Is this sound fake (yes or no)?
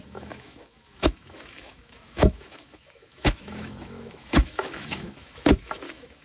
yes